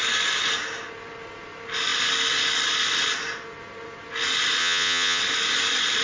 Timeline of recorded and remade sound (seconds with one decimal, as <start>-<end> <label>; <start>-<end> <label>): 0.0-4.6 recorded; 4.6-5.2 remade; 5.2-6.0 recorded